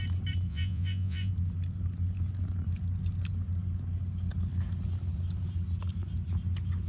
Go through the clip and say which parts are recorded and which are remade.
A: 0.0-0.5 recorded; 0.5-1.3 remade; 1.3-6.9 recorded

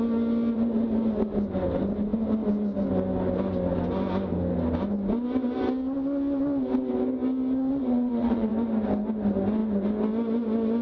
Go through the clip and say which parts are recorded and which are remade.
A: 0.0-7.7 recorded; 7.7-8.5 remade; 8.5-10.8 recorded

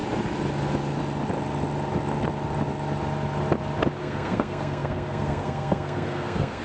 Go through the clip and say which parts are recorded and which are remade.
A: 0.0-4.0 recorded; 4.0-6.6 remade

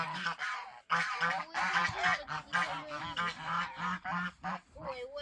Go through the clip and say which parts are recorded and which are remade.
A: 0.0-5.2 recorded

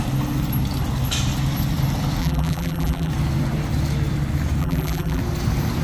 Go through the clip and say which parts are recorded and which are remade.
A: 0.0-2.2 recorded; 2.2-3.1 remade; 3.1-4.6 recorded; 4.6-5.2 remade; 5.2-5.8 recorded

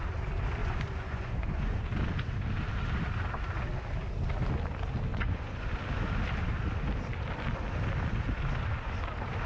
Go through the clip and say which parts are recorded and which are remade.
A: 0.0-0.6 recorded; 0.6-1.8 remade; 1.8-5.1 recorded; 5.1-5.7 remade; 5.7-9.5 recorded